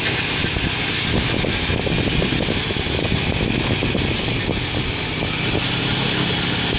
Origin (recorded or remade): recorded